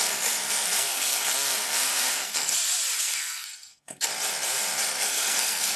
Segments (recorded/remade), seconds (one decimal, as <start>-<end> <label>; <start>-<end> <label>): 0.0-2.5 remade; 2.5-3.0 recorded; 3.0-4.1 remade; 4.1-4.8 recorded; 4.8-5.8 remade